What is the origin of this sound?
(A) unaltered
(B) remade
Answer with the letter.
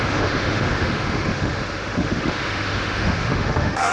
B